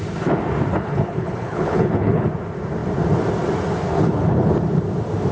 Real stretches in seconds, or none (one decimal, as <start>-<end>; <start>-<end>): 0.0-0.7; 2.3-3.9; 4.5-5.3